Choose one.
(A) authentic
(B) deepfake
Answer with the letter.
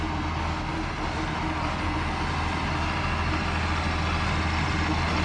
A